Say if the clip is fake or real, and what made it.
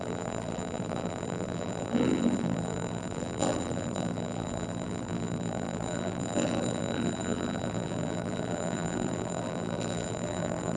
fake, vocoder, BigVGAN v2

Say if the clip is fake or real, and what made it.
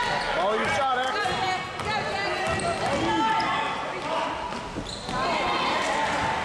real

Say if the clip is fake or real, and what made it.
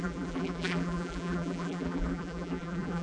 fake, vocoder, BigVGAN v2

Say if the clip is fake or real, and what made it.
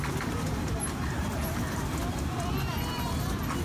fake, vocoder, BigVGAN v2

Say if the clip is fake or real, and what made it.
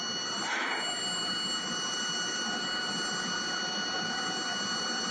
fake, vocoder, BigVGAN v2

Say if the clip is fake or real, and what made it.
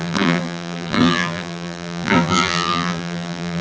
fake, vocoder, BigVGAN v2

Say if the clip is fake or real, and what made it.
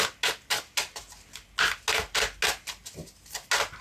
real